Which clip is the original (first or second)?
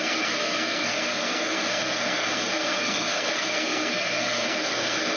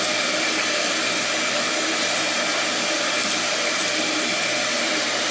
second